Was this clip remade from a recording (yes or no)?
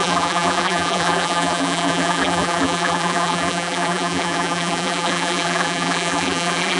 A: yes